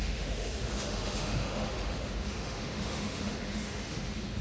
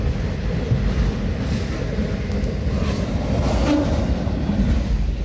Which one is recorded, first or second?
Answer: second